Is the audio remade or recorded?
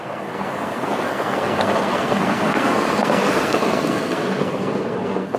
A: remade